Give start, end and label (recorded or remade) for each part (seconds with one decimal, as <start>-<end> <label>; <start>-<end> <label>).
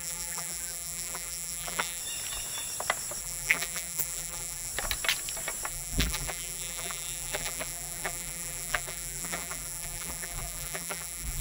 0.0-2.0 remade; 2.0-3.2 recorded; 3.2-4.7 remade; 4.7-5.7 recorded; 5.7-11.4 remade